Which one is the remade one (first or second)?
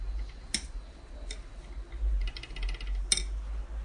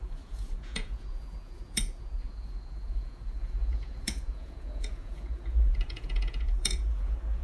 second